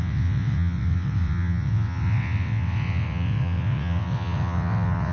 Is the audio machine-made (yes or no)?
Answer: yes